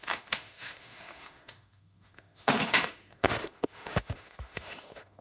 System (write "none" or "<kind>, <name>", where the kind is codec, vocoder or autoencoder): autoencoder, DAC-VAE